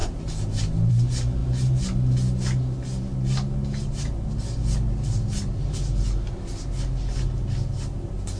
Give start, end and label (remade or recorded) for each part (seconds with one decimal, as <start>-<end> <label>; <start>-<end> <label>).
0.0-8.4 recorded